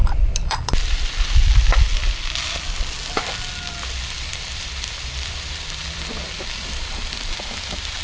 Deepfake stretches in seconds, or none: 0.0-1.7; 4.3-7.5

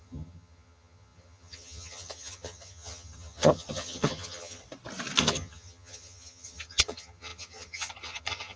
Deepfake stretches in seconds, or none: 0.0-4.6; 5.2-8.6

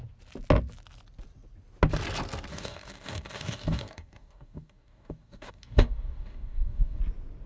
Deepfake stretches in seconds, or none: 2.5-7.0

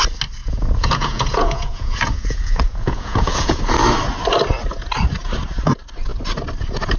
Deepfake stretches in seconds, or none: 0.4-3.6

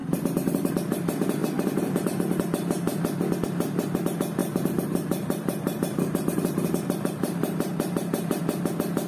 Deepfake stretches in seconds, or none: 0.0-0.7; 1.4-3.0; 4.4-8.4

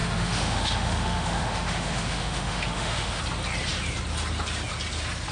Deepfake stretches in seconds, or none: 0.0-3.2

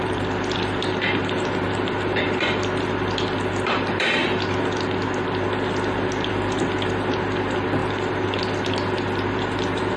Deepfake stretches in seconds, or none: 0.0-4.2; 6.3-10.0